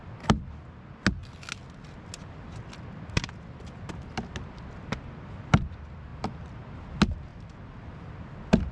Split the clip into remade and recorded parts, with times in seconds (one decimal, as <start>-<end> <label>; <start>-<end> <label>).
0.0-6.1 recorded; 6.1-6.7 remade; 6.7-7.3 recorded; 7.3-8.1 remade; 8.1-8.7 recorded